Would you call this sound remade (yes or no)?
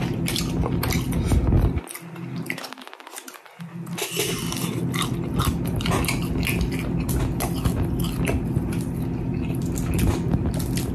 no